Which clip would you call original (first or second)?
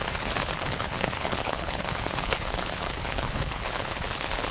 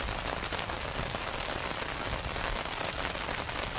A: second